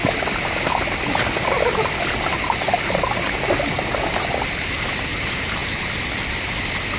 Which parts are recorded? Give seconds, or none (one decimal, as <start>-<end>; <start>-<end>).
0.0-7.0